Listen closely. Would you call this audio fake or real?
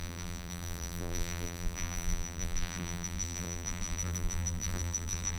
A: fake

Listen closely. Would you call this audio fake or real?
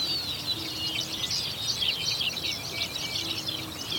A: real